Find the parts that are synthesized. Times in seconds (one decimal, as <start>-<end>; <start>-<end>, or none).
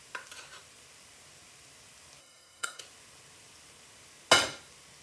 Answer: 2.2-2.8